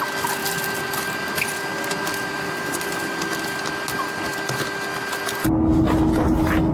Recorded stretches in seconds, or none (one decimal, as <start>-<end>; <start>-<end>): 0.0-6.7